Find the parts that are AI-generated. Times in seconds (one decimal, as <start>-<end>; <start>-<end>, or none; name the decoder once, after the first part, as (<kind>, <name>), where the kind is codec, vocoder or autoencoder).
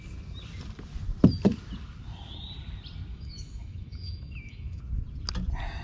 3.1-4.8 (autoencoder, DAC-VAE)